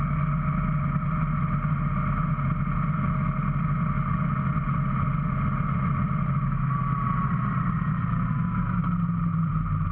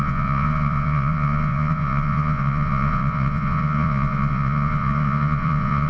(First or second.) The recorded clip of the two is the first